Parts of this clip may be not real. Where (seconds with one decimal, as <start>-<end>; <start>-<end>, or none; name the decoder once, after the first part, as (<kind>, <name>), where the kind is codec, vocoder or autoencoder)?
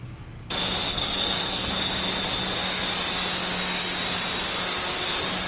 0.9-1.7 (codec, SNAC)